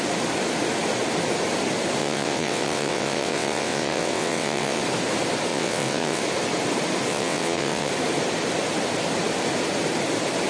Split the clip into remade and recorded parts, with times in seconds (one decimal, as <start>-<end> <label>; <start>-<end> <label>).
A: 0.0-2.0 recorded; 2.0-4.8 remade; 4.8-5.5 recorded; 5.5-6.2 remade; 6.2-7.1 recorded; 7.1-7.9 remade; 7.9-10.5 recorded